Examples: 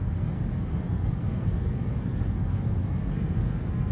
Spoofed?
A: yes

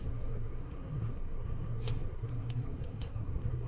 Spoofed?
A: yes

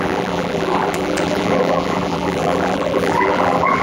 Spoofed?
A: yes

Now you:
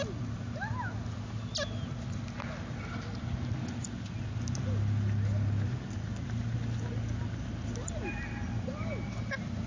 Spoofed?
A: no